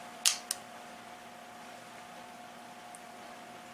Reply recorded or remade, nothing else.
recorded